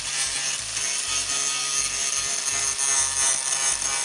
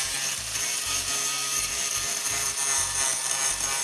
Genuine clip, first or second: first